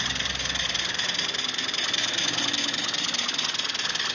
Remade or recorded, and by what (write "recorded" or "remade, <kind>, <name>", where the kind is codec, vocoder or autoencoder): recorded